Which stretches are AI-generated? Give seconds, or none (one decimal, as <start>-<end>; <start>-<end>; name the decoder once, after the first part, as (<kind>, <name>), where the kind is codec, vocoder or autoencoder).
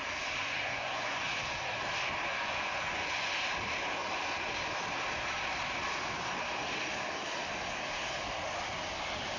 0.4-1.3 (vocoder, Vocos); 2.3-3.3